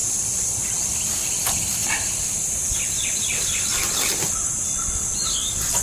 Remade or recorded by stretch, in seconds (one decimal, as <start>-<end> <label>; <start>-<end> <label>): 0.0-5.8 recorded